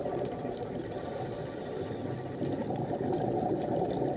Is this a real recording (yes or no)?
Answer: yes